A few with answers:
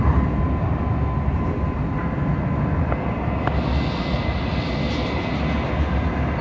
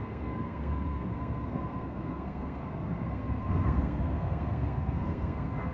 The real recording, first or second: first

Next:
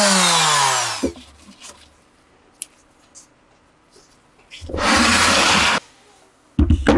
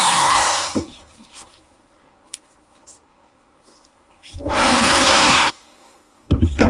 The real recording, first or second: first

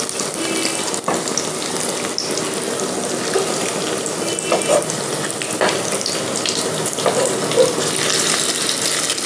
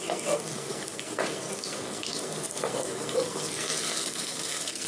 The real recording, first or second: first